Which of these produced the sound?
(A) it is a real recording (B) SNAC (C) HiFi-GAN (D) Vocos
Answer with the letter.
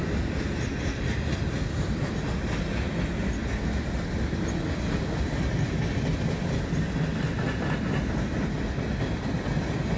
A